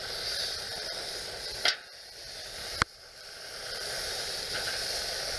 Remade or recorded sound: remade